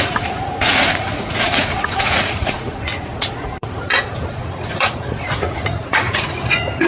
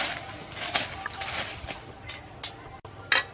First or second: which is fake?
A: first